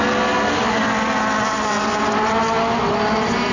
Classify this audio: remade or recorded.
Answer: recorded